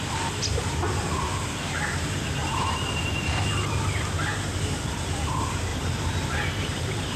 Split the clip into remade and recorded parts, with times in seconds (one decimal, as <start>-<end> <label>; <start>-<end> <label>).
0.0-2.4 recorded; 2.4-3.0 remade; 3.0-5.7 recorded; 5.7-7.2 remade